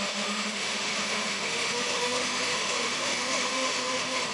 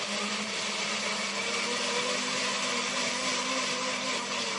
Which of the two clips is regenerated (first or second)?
first